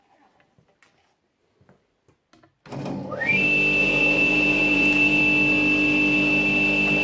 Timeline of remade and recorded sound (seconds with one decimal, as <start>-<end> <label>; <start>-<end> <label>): 0.0-3.8 recorded; 3.8-5.2 remade; 5.2-7.0 recorded